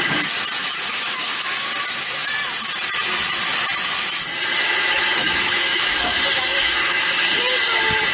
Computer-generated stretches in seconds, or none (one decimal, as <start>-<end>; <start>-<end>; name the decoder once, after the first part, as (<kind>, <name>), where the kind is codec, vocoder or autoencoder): 0.6-1.7 (autoencoder, DAC-VAE); 4.5-7.4